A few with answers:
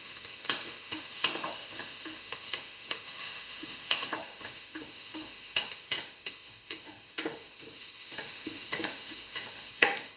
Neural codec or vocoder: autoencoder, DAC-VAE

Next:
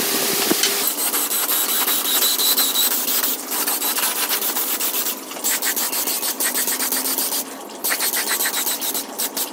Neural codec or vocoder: none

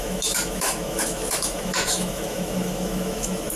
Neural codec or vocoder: autoencoder, DAC-VAE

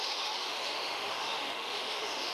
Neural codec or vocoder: autoencoder, DAC-VAE